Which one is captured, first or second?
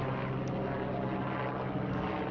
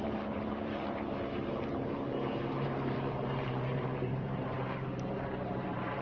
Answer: first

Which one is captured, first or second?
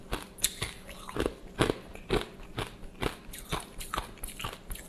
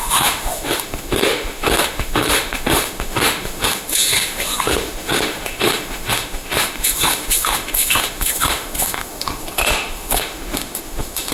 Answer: first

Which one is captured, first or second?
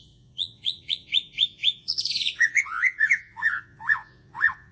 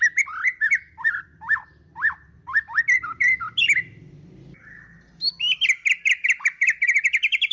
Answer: second